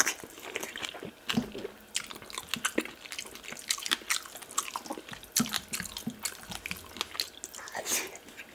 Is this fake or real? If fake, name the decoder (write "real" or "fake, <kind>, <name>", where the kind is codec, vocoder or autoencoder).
real